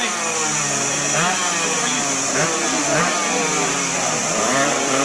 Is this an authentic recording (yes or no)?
no